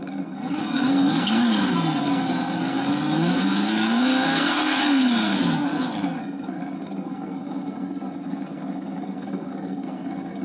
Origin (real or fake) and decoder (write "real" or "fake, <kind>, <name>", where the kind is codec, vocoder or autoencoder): fake, codec, SNAC